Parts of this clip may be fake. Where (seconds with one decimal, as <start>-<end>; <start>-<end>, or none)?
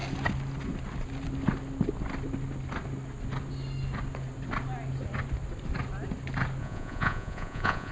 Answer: 6.6-7.9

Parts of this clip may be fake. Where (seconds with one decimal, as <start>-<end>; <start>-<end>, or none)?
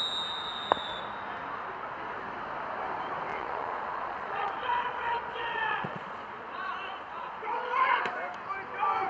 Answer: 3.3-8.0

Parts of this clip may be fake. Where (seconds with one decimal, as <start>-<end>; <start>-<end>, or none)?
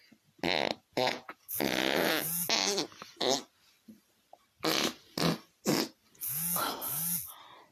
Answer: 0.9-1.5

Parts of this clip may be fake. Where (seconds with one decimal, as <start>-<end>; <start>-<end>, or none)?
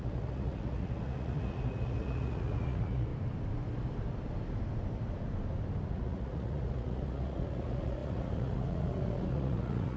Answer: 0.0-3.1; 5.9-10.0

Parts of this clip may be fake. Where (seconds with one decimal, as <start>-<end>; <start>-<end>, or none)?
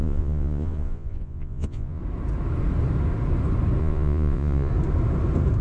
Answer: 0.0-2.0; 3.8-4.7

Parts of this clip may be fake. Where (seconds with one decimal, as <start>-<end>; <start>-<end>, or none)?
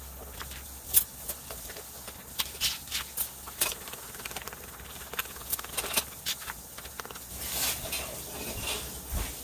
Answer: 5.2-5.7